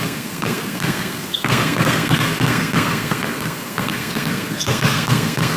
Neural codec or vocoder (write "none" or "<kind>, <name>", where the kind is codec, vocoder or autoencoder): codec, SNAC